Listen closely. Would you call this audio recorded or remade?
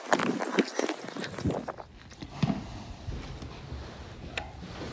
recorded